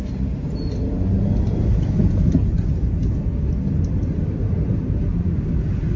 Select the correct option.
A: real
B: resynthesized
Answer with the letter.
A